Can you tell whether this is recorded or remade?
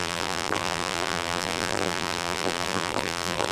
remade